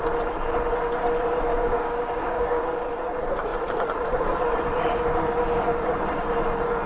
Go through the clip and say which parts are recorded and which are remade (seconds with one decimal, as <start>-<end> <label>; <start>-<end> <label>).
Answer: 0.0-1.5 recorded; 1.5-2.6 remade; 2.6-6.9 recorded